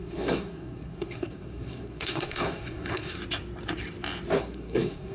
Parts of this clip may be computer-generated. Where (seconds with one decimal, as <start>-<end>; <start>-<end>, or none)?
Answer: 0.0-3.2; 4.4-5.1